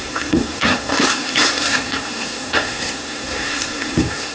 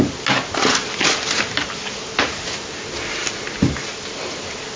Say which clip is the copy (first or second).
first